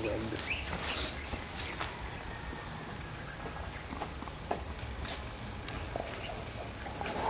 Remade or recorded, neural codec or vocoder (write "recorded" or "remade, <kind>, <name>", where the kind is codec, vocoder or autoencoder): recorded